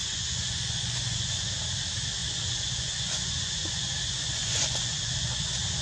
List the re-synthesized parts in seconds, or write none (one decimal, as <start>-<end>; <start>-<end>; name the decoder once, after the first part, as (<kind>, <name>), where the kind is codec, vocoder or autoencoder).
0.0-1.5 (vocoder, Vocos); 2.2-5.8